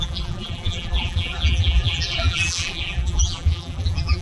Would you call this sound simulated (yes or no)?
yes